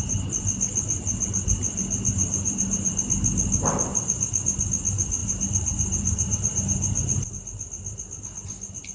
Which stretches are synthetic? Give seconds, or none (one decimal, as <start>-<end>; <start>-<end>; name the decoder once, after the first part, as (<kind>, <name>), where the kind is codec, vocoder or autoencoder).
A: 2.2-2.9 (vocoder, BigVGAN v2); 3.9-4.6; 5.2-7.3